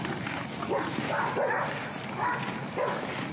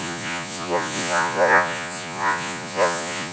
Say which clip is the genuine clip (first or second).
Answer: first